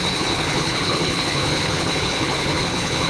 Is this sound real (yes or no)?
no